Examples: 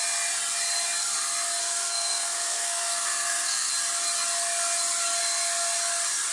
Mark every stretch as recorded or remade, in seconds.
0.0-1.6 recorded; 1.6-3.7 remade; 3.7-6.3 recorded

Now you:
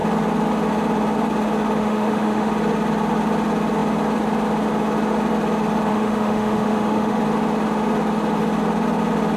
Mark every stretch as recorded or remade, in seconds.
0.0-1.8 recorded; 1.8-2.5 remade; 2.5-5.9 recorded; 5.9-7.2 remade; 7.2-9.4 recorded

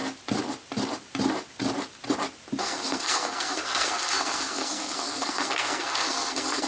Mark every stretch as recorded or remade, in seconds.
0.0-2.6 recorded; 2.6-6.7 remade

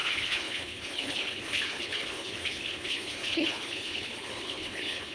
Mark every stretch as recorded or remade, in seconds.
0.0-5.1 remade

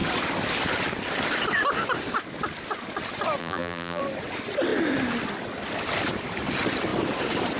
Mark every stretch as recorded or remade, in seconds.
0.0-3.4 recorded; 3.4-4.0 remade; 4.0-7.6 recorded

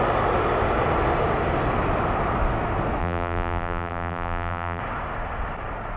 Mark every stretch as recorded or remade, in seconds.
0.0-3.0 recorded; 3.0-4.8 remade; 4.8-6.0 recorded

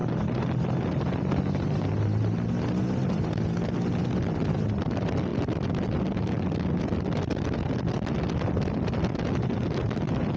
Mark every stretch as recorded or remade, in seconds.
0.0-10.4 recorded

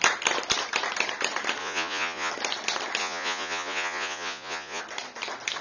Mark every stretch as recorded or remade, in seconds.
0.0-1.6 recorded; 1.6-2.3 remade; 2.3-3.0 recorded; 3.0-4.8 remade; 4.8-5.6 recorded